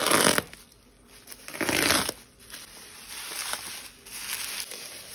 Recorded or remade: recorded